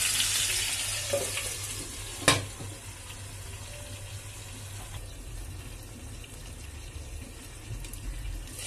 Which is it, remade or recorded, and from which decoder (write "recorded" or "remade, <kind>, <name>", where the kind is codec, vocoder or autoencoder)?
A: recorded